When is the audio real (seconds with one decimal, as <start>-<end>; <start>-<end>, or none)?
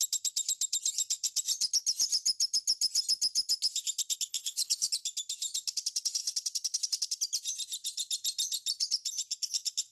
0.0-4.3; 4.9-9.9